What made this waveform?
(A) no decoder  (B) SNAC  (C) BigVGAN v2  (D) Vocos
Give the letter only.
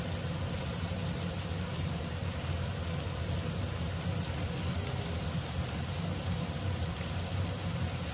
A